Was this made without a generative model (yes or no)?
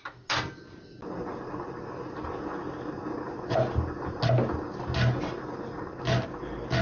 yes